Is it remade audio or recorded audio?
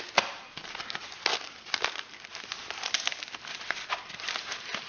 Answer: recorded